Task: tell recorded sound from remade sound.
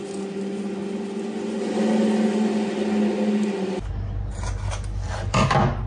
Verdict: recorded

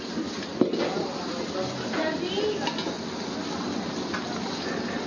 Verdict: recorded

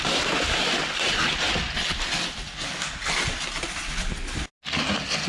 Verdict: recorded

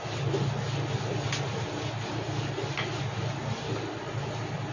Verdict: recorded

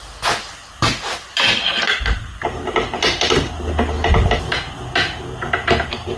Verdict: recorded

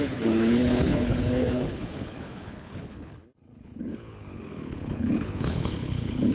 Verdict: remade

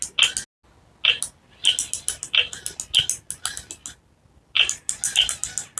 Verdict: recorded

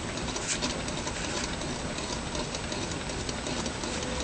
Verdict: recorded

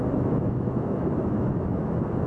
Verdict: remade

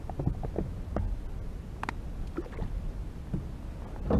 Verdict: recorded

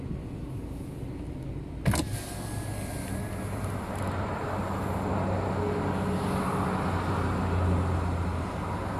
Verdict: recorded